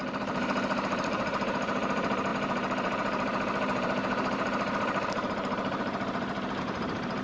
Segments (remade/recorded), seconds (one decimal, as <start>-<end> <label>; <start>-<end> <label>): 0.0-7.2 remade